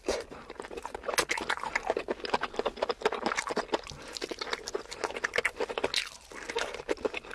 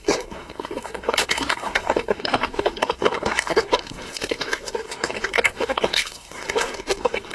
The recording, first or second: first